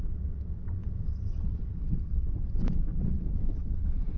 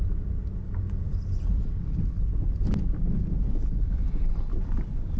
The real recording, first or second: second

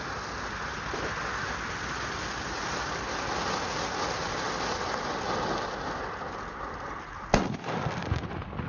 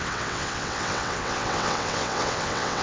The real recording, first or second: first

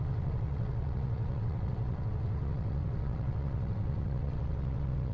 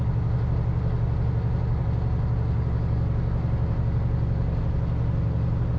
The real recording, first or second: second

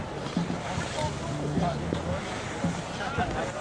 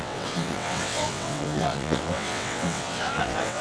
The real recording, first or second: first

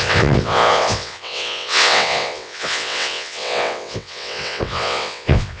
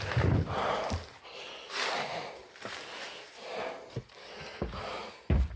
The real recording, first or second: second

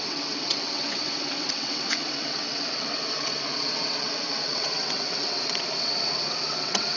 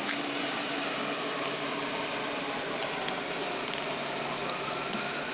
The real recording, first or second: second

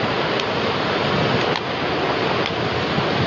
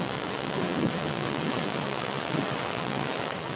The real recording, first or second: first